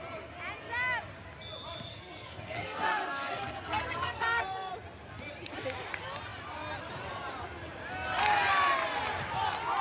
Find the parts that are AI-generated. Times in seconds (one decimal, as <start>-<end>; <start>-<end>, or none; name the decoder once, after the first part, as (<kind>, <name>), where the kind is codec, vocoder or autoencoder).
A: 1.9-4.7 (codec, SNAC)